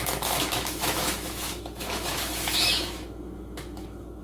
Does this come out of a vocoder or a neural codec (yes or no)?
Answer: yes